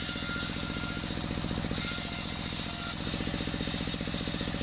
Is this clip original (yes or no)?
yes